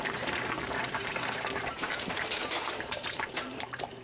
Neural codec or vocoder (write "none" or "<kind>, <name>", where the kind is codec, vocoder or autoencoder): vocoder, BigVGAN v2